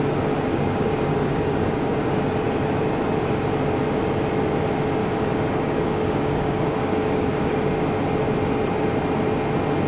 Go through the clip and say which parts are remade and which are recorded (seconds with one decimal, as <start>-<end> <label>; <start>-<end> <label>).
0.0-0.5 recorded; 0.5-2.2 remade; 2.2-5.0 recorded; 5.0-7.6 remade; 7.6-9.9 recorded